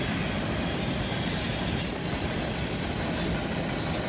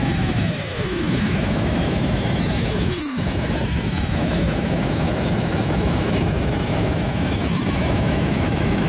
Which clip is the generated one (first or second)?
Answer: second